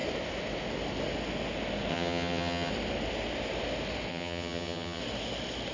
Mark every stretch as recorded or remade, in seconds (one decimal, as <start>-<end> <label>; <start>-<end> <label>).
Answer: 0.0-1.9 recorded; 1.9-2.7 remade; 2.7-4.1 recorded; 4.1-5.0 remade; 5.0-5.7 recorded